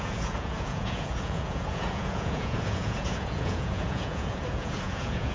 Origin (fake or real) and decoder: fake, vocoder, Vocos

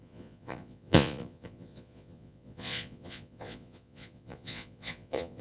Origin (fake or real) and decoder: fake, vocoder, Vocos